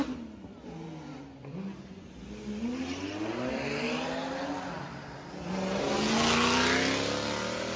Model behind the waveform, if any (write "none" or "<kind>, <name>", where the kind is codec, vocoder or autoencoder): none